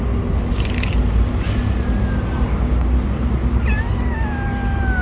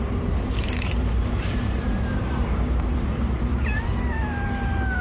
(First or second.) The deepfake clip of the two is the second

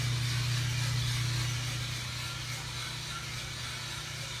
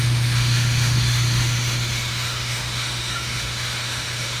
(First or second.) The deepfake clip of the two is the second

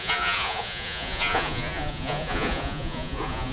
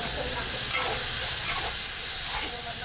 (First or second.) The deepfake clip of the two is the first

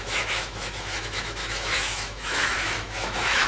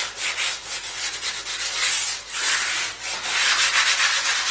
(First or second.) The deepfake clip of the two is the first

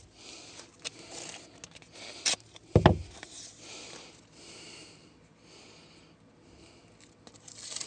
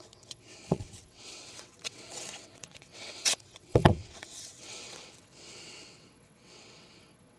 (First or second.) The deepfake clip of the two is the second